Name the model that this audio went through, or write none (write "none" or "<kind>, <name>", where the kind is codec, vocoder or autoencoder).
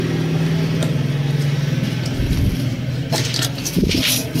none